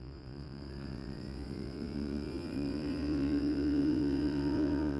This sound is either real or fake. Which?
fake